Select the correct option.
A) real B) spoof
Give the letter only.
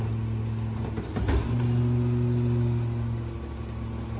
A